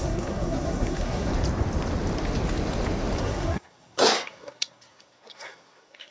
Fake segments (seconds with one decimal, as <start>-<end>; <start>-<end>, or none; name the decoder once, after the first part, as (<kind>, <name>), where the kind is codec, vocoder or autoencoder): 0.0-1.3 (codec, SNAC); 3.2-6.1